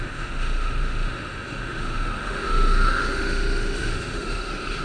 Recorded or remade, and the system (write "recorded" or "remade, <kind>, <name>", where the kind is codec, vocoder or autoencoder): remade, autoencoder, DAC-VAE